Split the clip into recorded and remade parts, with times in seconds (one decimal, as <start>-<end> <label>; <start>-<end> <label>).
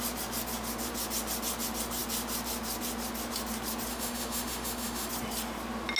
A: 0.0-3.9 recorded; 3.9-5.1 remade; 5.1-6.0 recorded